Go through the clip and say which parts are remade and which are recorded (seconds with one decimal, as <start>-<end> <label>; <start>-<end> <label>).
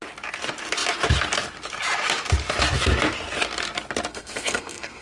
0.0-4.1 recorded; 4.1-5.0 remade